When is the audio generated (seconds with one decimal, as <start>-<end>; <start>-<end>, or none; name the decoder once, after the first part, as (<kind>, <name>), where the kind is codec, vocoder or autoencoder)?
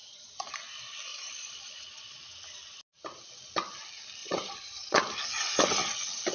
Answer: 0.0-0.5 (vocoder, Vocos); 1.1-2.2; 4.2-5.0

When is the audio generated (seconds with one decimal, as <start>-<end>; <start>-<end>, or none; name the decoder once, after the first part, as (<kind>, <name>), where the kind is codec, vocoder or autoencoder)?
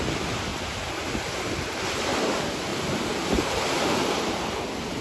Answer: 0.5-1.8 (vocoder, BigVGAN v2); 2.7-4.6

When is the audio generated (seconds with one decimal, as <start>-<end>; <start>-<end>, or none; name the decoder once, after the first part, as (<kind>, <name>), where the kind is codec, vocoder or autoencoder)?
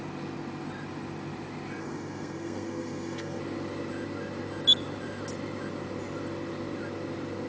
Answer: 1.8-3.4 (codec, SNAC)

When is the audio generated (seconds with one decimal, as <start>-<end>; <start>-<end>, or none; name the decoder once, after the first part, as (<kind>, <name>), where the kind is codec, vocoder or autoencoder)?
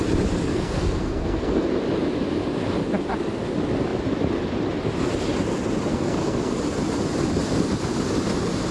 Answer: 0.5-1.7 (codec, SNAC); 5.9-6.6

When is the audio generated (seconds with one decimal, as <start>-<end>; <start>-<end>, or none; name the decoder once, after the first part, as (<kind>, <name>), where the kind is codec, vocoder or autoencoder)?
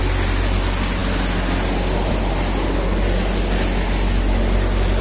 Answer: none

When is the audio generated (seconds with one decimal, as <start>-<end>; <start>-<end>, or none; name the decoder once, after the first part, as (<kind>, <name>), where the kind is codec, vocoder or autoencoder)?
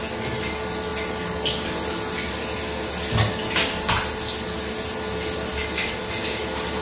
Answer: none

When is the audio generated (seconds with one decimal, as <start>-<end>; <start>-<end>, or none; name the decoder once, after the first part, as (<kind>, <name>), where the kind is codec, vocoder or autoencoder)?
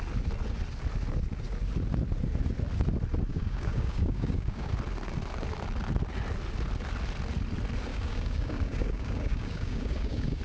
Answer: 3.3-4.7 (codec, DAC); 7.9-10.4